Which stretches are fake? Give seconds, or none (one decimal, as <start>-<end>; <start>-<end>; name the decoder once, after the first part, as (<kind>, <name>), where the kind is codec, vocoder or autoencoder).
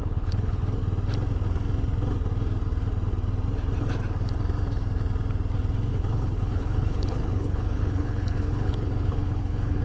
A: 0.0-0.6 (codec, HILCodec); 5.9-9.8